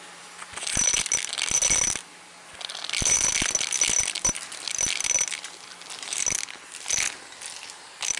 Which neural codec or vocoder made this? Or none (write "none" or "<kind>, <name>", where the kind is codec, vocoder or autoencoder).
none